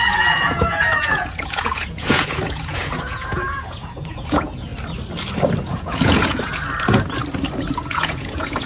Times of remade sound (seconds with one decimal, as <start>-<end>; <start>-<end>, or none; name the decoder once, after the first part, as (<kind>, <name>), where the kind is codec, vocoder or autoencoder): 0.0-4.7 (vocoder, Vocos); 5.6-6.5; 7.7-8.7